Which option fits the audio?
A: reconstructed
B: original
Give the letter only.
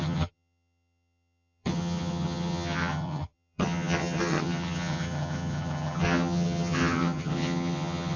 A